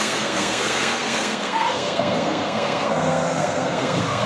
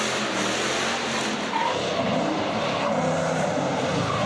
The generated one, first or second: first